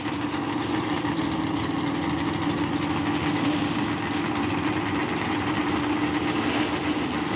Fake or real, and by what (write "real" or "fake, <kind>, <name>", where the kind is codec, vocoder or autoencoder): real